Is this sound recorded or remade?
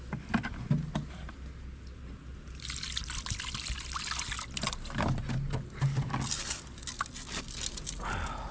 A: recorded